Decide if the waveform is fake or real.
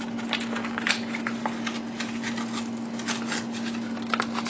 real